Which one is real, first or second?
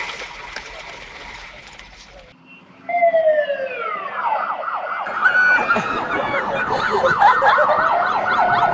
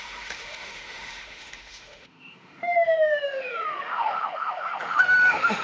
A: first